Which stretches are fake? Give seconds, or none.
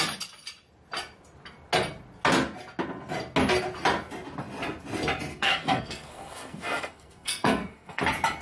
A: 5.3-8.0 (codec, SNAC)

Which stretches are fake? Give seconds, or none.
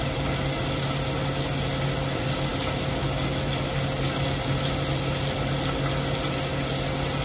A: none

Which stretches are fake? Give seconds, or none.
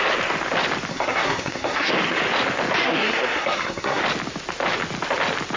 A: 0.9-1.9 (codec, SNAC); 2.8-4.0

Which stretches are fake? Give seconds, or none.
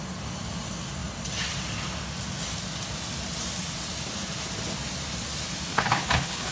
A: 5.7-6.5 (codec, HILCodec)